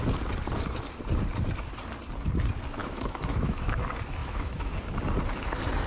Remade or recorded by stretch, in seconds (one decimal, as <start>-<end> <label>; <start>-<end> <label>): 0.0-2.8 recorded; 2.8-3.8 remade; 3.8-4.2 recorded; 4.2-4.7 remade; 4.7-5.9 recorded